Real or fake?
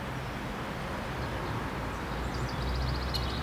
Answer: real